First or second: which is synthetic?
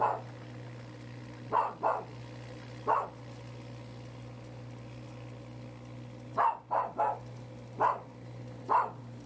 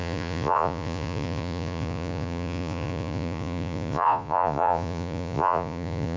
second